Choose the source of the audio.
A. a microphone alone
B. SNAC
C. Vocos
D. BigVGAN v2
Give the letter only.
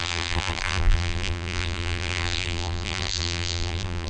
D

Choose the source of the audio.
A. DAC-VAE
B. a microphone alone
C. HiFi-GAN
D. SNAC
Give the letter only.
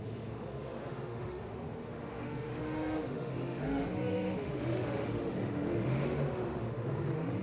A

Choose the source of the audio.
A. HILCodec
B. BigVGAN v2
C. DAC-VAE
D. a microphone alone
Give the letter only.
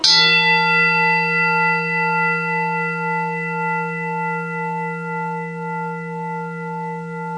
D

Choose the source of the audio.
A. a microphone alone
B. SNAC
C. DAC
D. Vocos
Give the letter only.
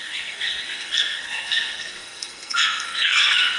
B